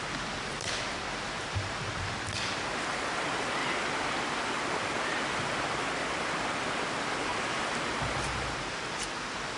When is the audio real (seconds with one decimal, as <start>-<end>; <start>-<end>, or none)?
0.0-9.6